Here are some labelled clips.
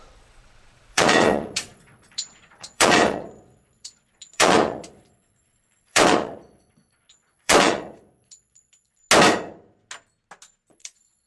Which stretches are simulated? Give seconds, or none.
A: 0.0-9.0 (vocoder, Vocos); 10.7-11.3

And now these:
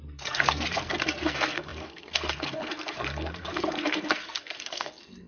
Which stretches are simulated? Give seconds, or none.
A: 0.0-5.3 (codec, SNAC)